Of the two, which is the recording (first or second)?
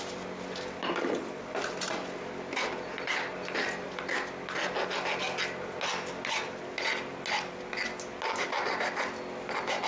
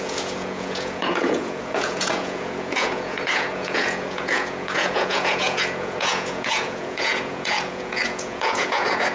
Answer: first